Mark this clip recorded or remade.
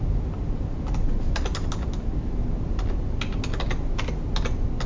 recorded